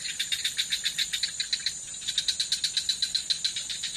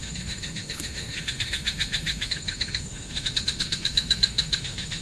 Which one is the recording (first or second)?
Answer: first